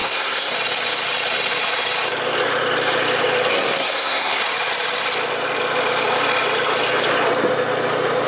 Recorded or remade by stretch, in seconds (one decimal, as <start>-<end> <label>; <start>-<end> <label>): 0.0-0.5 remade; 0.5-3.5 recorded; 3.5-4.4 remade; 4.4-8.3 recorded